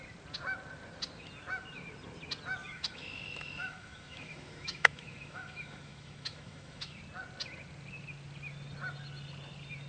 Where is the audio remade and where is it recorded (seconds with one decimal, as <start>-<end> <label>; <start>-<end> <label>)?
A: 0.0-2.6 recorded; 2.6-7.0 remade; 7.0-9.9 recorded